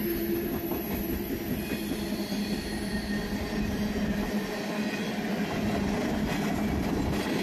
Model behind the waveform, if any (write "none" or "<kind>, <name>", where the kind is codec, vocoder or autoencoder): none